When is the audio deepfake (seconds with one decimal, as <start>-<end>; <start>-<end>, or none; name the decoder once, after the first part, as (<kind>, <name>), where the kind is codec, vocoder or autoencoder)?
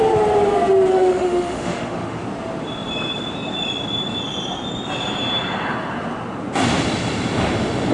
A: 0.9-2.2 (autoencoder, DAC-VAE)